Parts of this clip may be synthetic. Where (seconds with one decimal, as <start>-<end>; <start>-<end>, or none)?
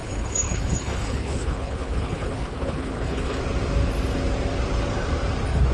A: 0.0-3.4